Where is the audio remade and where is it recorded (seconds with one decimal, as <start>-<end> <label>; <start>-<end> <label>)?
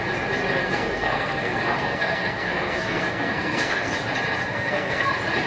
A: 0.0-0.6 recorded; 0.6-3.9 remade; 3.9-4.4 recorded; 4.4-5.1 remade; 5.1-5.5 recorded